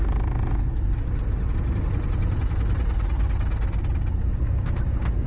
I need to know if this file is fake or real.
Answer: real